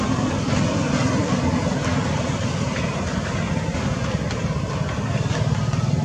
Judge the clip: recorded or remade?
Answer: recorded